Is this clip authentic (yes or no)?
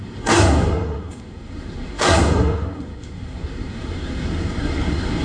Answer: no